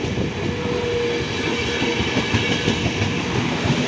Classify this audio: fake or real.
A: real